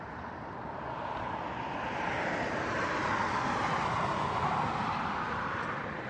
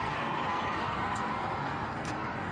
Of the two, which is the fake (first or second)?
second